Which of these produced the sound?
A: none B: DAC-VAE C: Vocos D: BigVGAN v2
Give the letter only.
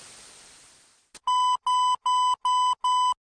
A